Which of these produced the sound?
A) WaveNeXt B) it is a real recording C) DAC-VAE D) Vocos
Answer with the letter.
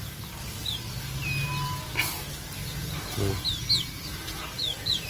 B